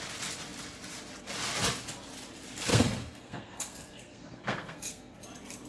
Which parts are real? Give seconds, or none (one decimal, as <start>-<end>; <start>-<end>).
0.0-2.7; 5.2-5.7